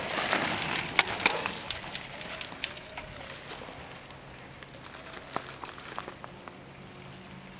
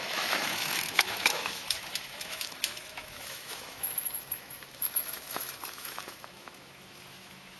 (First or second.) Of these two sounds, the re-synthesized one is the second